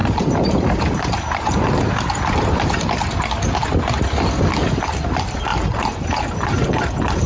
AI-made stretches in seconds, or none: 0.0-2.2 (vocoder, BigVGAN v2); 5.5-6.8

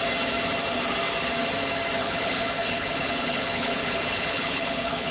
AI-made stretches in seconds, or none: 2.0-5.1 (codec, HILCodec)

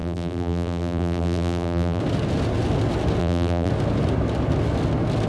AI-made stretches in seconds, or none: 0.0-2.0 (vocoder, BigVGAN v2); 3.2-3.7

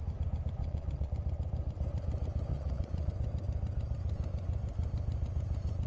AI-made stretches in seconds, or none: 0.6-1.1 (vocoder, Vocos); 2.5-3.1